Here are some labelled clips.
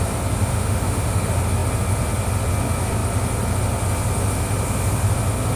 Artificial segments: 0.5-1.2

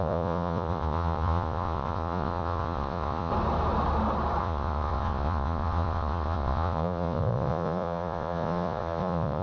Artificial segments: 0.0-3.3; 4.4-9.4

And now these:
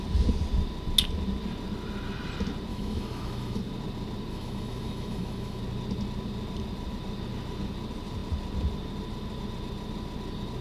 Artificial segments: 2.7-3.6; 4.3-5.6

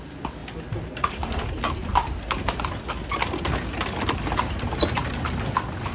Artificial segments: none